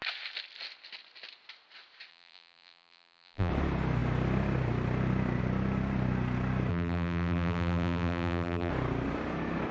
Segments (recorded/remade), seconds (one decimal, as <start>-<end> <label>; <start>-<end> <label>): 0.0-2.1 recorded; 2.1-3.5 remade; 3.5-6.7 recorded; 6.7-8.7 remade; 8.7-9.7 recorded